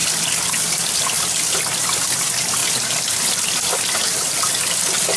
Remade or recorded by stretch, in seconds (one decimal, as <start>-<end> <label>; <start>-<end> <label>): 0.0-5.2 recorded